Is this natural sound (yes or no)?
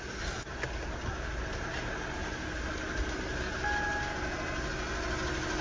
yes